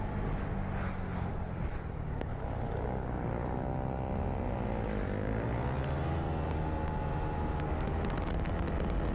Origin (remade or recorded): recorded